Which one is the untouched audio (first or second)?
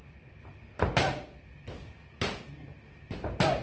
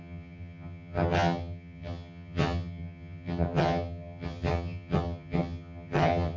first